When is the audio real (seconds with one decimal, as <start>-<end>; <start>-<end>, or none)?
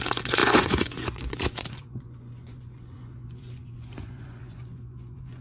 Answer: none